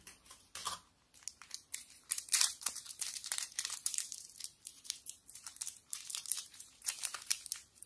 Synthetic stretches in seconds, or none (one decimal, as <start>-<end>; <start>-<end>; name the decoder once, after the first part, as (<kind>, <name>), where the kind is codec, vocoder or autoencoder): 0.0-0.6 (vocoder, BigVGAN v2); 1.3-7.9